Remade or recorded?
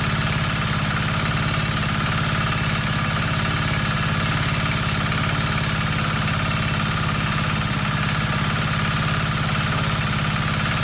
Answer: recorded